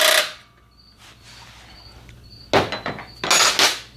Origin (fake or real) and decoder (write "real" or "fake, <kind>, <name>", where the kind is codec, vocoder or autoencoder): real